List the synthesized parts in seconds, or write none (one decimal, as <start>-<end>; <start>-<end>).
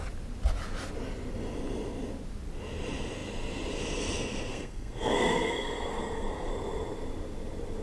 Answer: 4.5-6.5